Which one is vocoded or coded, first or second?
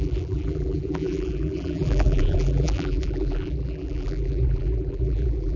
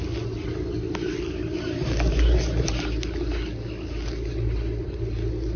first